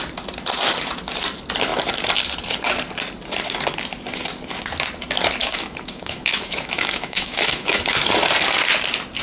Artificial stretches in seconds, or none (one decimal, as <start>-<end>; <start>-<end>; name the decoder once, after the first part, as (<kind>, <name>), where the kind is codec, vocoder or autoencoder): 5.4-7.8 (autoencoder, DAC-VAE)